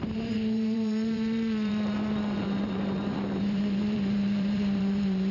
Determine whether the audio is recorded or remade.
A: remade